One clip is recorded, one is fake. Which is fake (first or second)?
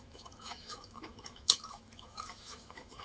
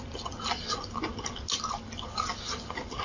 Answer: first